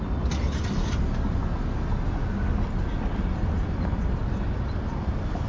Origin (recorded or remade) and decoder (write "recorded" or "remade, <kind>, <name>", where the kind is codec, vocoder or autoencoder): recorded